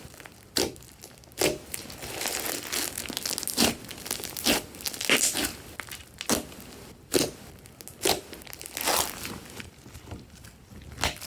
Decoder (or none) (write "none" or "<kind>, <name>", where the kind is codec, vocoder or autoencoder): none